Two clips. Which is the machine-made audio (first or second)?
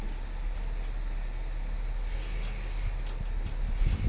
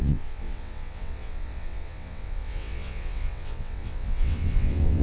second